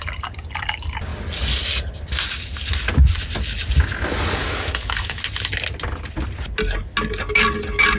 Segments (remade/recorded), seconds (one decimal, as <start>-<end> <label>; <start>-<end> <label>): 0.0-4.4 recorded; 4.4-5.2 remade; 5.2-8.0 recorded